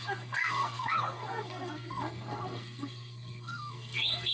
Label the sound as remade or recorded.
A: remade